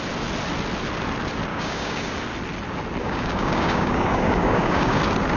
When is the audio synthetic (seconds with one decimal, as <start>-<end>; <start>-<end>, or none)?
1.5-2.1; 3.0-5.0